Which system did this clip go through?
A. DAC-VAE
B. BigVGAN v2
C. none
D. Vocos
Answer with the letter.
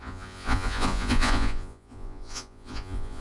D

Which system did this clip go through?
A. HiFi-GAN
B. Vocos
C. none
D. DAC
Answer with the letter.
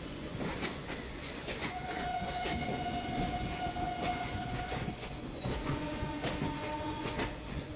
B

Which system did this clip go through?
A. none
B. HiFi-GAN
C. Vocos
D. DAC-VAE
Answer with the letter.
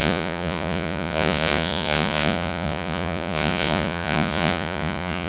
C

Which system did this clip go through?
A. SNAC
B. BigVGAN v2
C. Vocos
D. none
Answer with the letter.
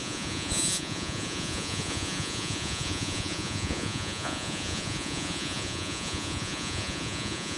C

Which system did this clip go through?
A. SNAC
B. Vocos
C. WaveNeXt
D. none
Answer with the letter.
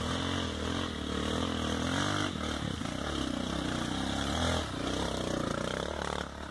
D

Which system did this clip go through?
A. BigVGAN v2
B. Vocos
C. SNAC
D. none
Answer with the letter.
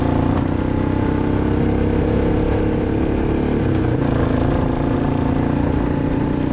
D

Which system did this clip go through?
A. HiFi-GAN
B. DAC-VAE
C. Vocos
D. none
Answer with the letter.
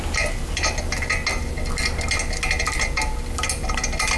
D